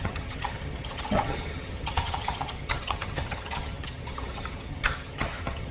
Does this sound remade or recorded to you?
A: remade